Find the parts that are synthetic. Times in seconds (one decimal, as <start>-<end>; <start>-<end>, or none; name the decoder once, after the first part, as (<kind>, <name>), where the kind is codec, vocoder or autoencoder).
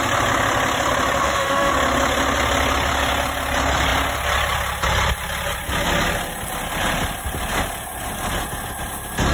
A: 1.2-1.7 (autoencoder, DAC-VAE)